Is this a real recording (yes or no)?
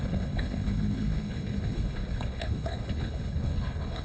no